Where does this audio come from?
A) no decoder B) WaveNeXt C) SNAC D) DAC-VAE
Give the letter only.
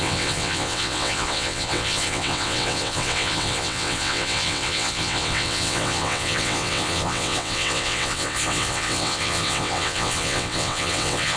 B